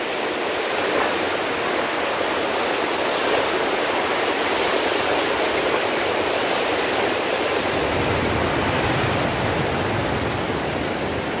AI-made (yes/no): no